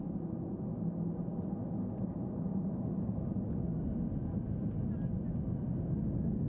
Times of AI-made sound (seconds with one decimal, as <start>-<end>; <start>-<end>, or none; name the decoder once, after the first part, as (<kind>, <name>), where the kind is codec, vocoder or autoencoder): none